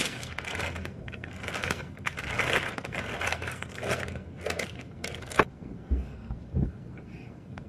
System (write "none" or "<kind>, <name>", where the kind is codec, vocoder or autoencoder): codec, SNAC